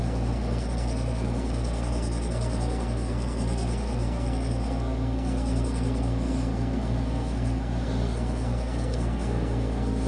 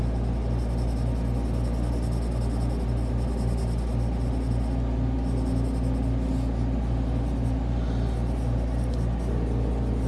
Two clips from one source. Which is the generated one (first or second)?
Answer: first